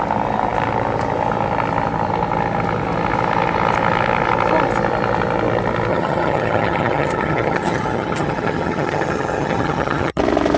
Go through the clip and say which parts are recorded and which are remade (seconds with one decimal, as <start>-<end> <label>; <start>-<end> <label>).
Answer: 0.0-5.9 recorded; 5.9-10.2 remade; 10.2-10.6 recorded